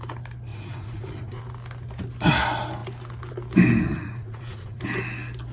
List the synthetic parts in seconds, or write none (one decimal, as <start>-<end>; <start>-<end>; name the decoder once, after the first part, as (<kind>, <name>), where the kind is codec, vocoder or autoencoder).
0.5-1.4 (vocoder, Vocos); 3.9-4.8